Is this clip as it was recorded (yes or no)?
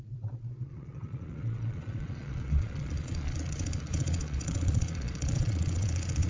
no